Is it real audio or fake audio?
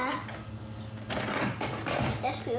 real